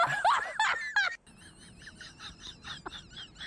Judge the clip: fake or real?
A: real